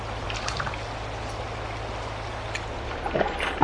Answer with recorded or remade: recorded